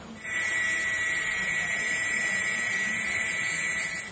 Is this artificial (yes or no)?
no